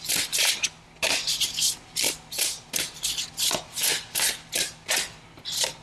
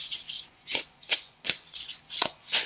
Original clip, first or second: first